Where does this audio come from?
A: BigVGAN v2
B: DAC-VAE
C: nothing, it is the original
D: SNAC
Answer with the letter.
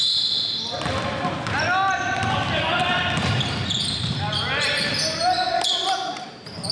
C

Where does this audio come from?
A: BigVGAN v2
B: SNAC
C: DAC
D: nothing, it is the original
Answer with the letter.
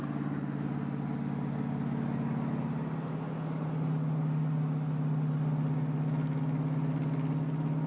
D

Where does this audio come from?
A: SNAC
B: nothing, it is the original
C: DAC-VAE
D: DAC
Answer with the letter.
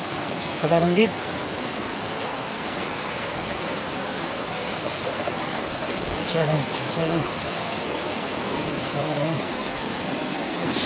A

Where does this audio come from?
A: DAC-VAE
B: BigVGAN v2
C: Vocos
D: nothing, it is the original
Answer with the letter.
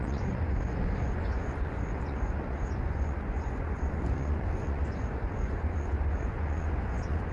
C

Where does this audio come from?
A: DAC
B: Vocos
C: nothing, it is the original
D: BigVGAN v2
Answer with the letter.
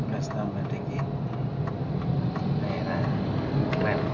C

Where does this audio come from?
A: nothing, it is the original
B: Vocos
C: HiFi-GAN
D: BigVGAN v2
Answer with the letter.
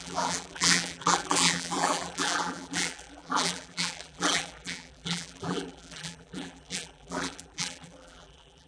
D